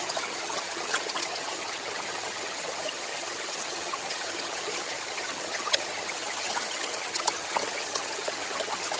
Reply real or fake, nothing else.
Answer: fake